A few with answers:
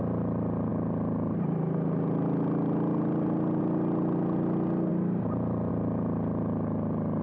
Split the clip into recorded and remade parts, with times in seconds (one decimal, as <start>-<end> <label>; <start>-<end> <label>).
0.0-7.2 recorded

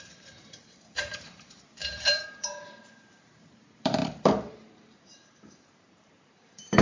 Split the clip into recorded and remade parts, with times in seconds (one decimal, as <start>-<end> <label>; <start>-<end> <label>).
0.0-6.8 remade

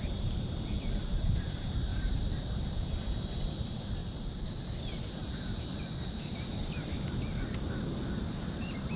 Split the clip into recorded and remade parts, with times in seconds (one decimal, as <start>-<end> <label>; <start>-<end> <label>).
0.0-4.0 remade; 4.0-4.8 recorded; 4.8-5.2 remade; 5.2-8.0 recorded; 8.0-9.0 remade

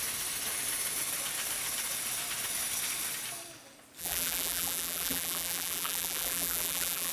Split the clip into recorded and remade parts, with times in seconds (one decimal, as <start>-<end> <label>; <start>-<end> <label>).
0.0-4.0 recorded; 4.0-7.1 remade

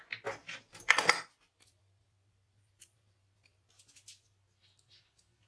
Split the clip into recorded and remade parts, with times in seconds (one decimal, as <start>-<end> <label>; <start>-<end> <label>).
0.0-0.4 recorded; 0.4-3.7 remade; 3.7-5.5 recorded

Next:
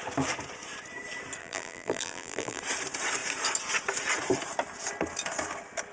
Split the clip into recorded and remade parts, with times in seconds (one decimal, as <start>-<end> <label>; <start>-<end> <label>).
0.0-1.4 recorded; 1.4-2.6 remade; 2.6-5.9 recorded

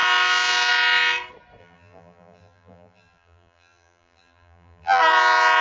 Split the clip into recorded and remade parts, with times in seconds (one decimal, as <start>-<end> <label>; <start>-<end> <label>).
0.0-1.6 recorded; 1.6-5.0 remade; 5.0-5.6 recorded

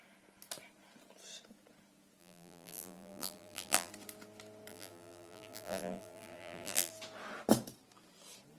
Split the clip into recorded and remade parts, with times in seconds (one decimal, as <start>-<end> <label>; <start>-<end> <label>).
0.0-2.2 recorded; 2.2-3.9 remade; 3.9-4.7 recorded; 4.7-6.9 remade; 6.9-8.6 recorded